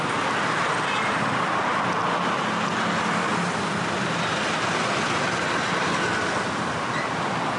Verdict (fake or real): real